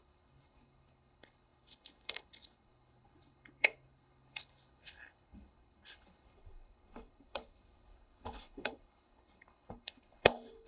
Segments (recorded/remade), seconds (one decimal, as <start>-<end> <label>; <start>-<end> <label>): 0.0-10.7 remade